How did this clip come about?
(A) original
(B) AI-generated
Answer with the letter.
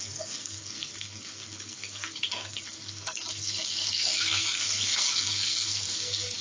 B